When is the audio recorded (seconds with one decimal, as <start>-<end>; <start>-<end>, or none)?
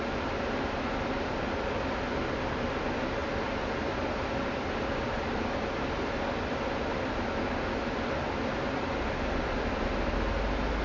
0.0-10.8